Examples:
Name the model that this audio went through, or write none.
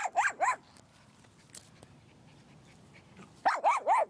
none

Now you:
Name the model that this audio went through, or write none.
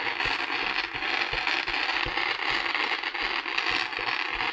none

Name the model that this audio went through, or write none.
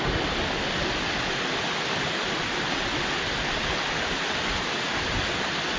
none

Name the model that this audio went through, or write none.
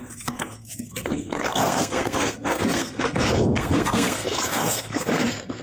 codec, SNAC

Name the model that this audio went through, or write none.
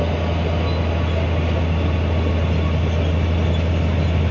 none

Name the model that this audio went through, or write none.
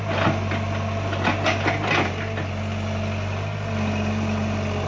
none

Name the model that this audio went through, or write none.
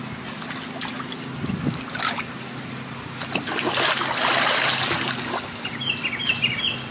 none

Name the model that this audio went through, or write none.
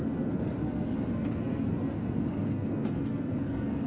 codec, SNAC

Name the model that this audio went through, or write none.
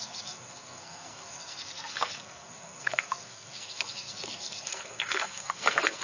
codec, SNAC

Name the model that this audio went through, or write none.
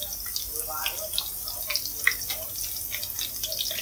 none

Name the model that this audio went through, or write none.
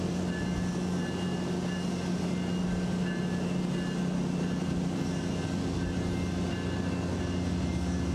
none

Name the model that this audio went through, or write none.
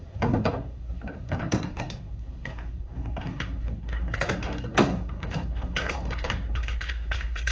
codec, SNAC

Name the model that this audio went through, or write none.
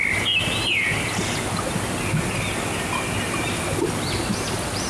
none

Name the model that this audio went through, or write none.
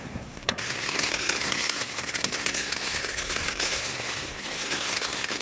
codec, SNAC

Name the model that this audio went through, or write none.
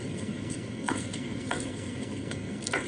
codec, SNAC